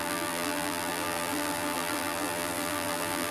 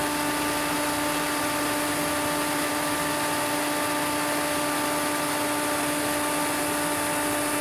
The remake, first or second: first